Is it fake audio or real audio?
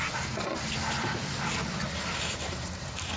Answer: real